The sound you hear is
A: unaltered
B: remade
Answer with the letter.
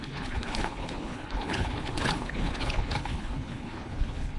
B